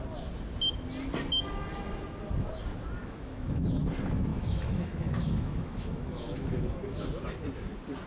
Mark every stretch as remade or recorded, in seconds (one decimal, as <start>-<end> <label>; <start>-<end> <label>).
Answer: 0.0-3.0 recorded; 3.0-3.8 remade; 3.8-4.3 recorded; 4.3-7.0 remade; 7.0-8.1 recorded